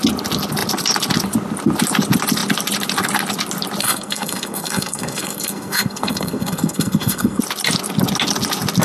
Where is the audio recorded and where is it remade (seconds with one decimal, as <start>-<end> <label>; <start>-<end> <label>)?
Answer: 0.0-3.8 recorded; 3.8-7.4 remade; 7.4-8.8 recorded